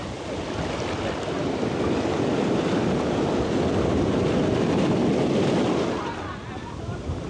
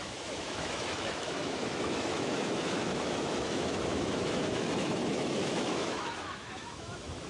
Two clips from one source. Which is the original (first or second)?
first